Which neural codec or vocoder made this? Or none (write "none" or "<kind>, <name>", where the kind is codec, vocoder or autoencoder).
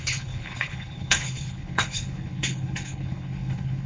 codec, HILCodec